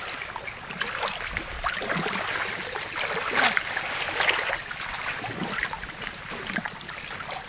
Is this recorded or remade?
recorded